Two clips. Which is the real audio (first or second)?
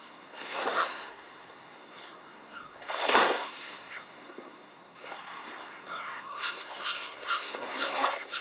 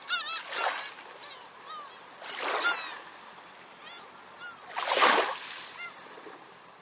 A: second